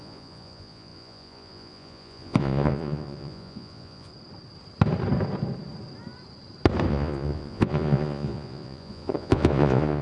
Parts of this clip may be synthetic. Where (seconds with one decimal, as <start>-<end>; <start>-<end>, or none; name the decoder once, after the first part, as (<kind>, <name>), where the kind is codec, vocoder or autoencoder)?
0.0-4.1 (vocoder, Vocos); 6.9-10.0